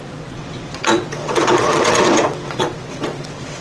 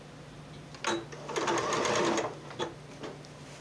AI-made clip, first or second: first